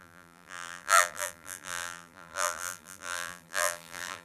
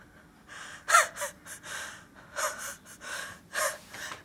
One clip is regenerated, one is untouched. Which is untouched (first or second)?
second